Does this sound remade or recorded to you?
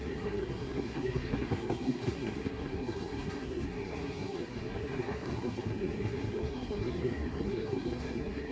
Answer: remade